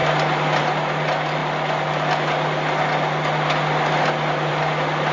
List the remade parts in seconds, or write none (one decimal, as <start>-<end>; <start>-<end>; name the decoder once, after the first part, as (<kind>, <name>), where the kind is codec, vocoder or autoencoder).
none